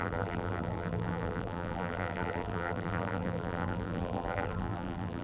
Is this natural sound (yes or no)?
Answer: no